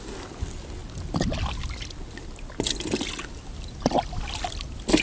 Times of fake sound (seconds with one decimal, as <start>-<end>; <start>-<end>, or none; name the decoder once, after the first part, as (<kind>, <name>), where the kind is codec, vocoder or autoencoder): none